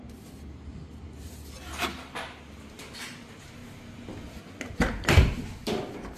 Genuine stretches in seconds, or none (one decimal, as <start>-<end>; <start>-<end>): 0.0-6.2

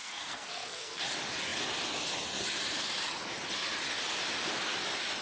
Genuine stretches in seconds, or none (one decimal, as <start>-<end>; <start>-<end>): 1.0-5.2

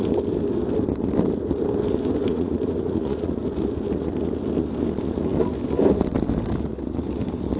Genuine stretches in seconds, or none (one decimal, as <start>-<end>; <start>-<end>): 0.0-2.3; 3.3-7.6

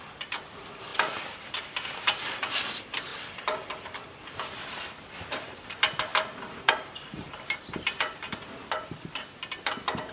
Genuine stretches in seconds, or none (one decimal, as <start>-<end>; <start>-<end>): none

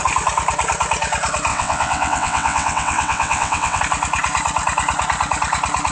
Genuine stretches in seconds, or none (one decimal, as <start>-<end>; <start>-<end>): 0.0-1.5; 3.8-5.9